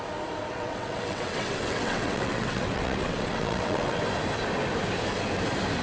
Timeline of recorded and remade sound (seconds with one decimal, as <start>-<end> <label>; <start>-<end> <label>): 0.0-0.5 recorded; 0.5-4.0 remade; 4.0-5.8 recorded